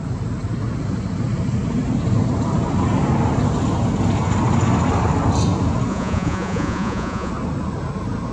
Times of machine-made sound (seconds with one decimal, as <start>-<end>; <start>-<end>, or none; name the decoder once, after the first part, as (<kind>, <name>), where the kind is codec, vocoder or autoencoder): 5.9-7.3 (vocoder, Vocos)